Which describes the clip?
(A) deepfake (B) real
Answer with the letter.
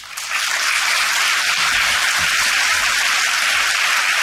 B